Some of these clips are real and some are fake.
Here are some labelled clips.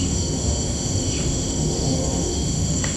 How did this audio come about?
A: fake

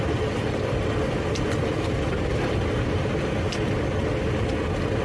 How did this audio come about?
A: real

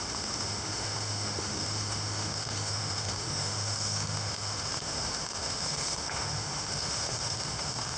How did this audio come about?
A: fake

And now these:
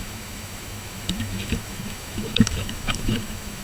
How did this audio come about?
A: fake